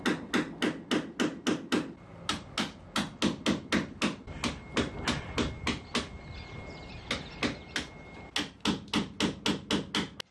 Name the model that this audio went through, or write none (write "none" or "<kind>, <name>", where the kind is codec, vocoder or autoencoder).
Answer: none